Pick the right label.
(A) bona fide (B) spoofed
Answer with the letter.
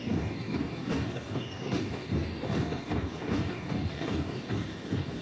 B